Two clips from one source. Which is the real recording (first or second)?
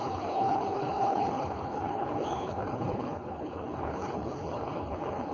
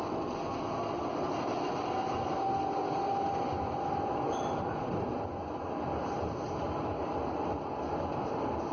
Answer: second